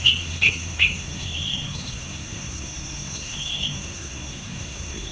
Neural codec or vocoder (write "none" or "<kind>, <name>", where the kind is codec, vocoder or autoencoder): codec, SNAC